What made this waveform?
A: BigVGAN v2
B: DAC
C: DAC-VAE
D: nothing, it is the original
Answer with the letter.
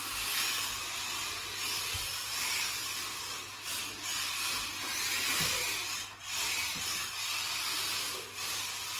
D